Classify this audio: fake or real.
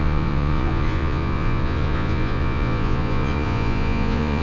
fake